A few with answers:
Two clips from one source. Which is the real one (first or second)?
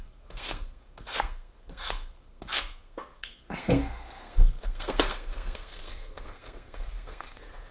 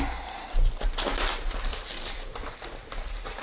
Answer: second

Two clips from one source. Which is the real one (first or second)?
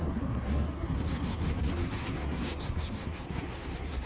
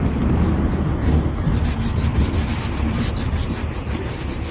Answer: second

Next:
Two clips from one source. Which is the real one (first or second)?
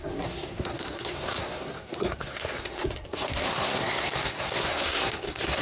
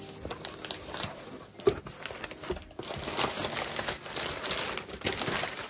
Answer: second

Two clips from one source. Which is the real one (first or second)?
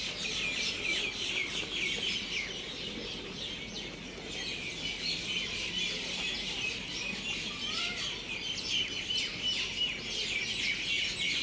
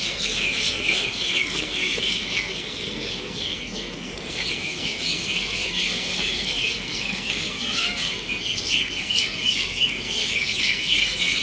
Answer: first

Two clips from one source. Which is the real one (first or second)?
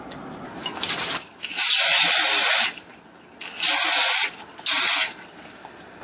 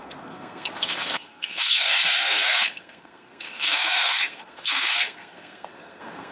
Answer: first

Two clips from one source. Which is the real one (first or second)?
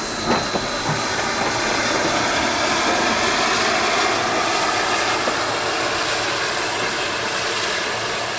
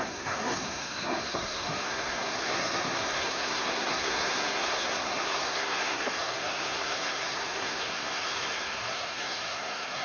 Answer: first